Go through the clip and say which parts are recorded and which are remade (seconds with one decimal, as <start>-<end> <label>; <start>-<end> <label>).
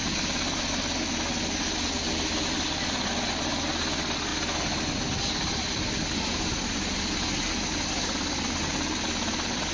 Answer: 0.0-9.7 recorded